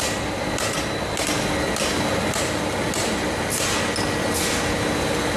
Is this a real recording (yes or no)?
yes